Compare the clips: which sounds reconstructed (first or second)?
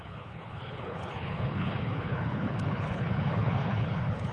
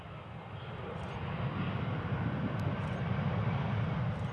first